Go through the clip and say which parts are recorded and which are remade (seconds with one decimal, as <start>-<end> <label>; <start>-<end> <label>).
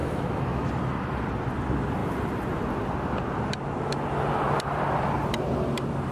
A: 0.0-0.7 remade; 0.7-6.1 recorded